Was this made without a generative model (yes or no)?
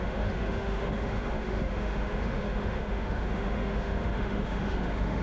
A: no